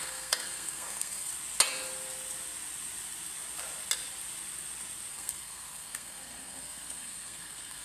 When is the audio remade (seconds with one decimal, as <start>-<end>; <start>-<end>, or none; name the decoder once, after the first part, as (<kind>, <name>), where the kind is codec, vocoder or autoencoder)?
0.0-1.3 (codec, SNAC); 5.1-7.8